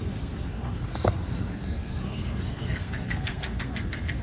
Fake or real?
fake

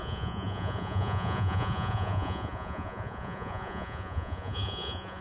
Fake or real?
fake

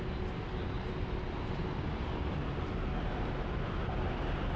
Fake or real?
real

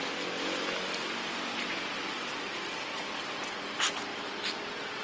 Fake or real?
real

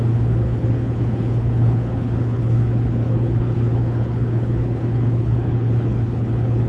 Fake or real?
fake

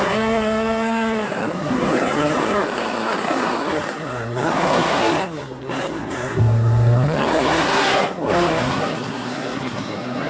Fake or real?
fake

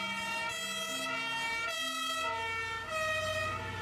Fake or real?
real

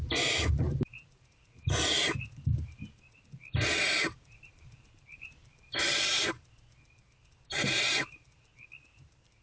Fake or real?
fake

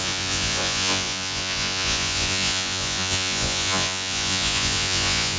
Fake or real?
fake